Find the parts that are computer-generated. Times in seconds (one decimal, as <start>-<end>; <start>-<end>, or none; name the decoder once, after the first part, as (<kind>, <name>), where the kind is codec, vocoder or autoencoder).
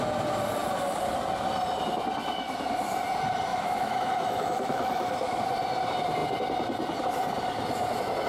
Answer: 3.5-5.4 (autoencoder, DAC-VAE)